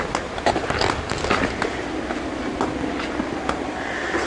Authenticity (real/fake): real